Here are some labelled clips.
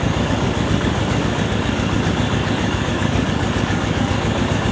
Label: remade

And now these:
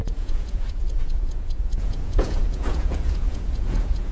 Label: remade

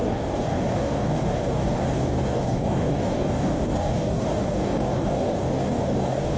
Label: remade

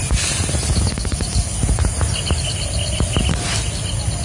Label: recorded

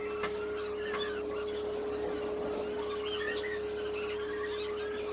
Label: recorded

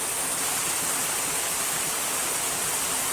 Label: recorded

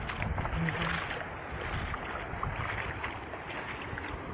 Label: recorded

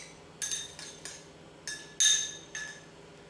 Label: recorded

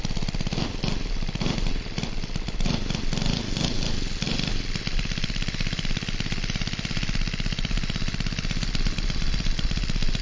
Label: recorded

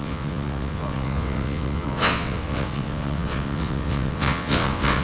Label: remade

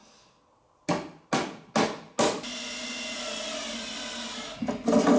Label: recorded